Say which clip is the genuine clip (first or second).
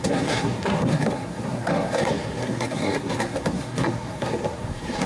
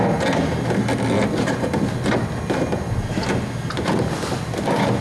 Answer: second